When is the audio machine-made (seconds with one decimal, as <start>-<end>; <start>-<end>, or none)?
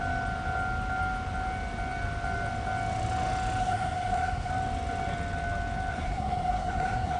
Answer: 3.6-4.5; 5.9-7.2